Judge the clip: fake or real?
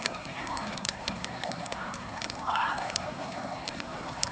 fake